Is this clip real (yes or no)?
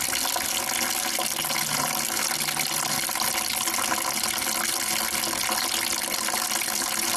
yes